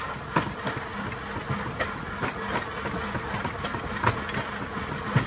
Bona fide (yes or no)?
yes